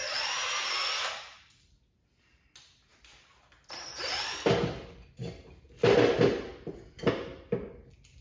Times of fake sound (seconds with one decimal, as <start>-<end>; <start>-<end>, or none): none